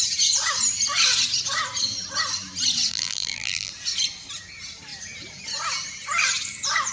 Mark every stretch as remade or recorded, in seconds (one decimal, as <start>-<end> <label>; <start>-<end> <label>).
0.0-2.9 recorded; 2.9-3.7 remade; 3.7-6.9 recorded